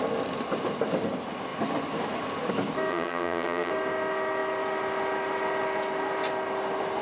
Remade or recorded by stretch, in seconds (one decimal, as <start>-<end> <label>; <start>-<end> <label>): 0.0-2.9 recorded; 2.9-3.7 remade; 3.7-7.0 recorded